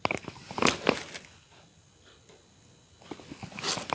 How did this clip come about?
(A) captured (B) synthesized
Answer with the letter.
A